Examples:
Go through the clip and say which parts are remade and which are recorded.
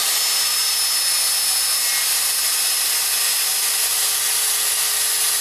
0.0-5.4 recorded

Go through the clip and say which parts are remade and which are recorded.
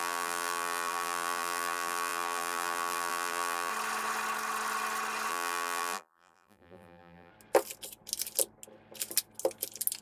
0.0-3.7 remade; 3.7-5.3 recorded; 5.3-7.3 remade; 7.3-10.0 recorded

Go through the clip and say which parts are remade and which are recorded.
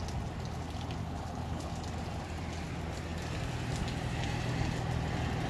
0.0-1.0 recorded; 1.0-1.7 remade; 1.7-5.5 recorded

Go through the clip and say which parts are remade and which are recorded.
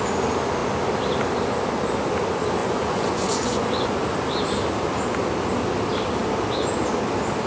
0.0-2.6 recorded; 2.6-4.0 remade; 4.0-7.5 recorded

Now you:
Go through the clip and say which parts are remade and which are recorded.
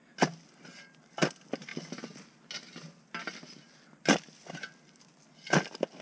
0.0-6.0 recorded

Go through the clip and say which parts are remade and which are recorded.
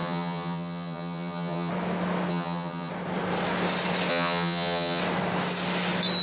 0.0-1.7 remade; 1.7-2.3 recorded; 2.3-2.9 remade; 2.9-4.1 recorded; 4.1-5.0 remade; 5.0-6.2 recorded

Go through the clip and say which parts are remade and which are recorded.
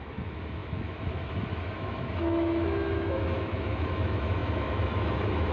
0.0-5.5 remade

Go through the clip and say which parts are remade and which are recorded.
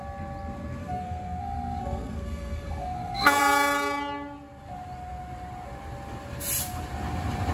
0.0-0.8 recorded; 0.8-3.4 remade; 3.4-7.5 recorded